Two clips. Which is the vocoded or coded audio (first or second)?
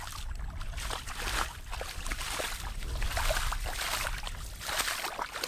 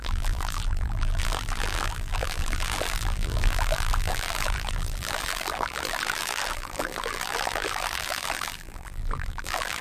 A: second